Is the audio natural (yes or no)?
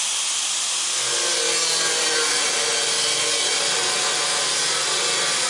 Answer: yes